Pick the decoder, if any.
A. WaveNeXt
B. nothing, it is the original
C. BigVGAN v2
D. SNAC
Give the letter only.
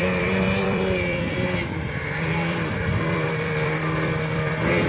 C